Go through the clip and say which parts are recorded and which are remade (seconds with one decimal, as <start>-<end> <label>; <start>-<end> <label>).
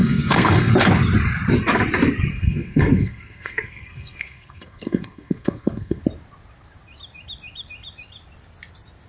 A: 0.0-0.7 remade; 0.7-2.3 recorded; 2.3-6.0 remade; 6.0-9.1 recorded